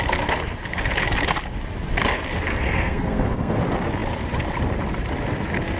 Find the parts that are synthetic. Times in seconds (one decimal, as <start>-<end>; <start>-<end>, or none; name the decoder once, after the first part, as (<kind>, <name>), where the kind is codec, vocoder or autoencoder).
2.5-3.6 (codec, SNAC)